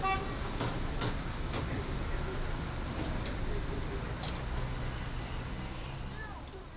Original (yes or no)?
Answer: yes